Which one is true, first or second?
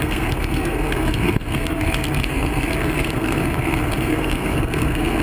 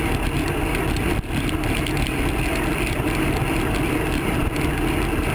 second